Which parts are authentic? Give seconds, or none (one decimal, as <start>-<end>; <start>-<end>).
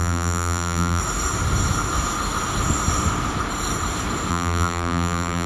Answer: 1.0-4.3